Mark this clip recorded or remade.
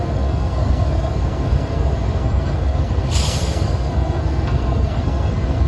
remade